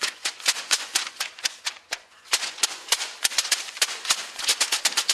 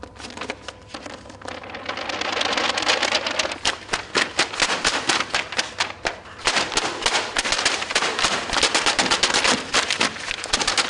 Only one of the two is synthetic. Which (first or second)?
first